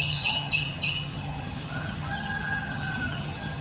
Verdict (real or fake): fake